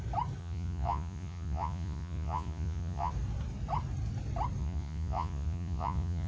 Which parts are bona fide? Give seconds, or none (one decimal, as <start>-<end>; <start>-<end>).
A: 0.0-0.4; 3.1-4.6